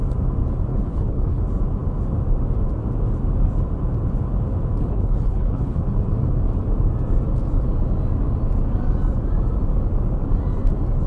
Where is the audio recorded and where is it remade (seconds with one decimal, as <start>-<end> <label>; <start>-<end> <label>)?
0.0-0.7 recorded; 0.7-1.4 remade; 1.4-4.8 recorded; 4.8-5.8 remade; 5.8-11.1 recorded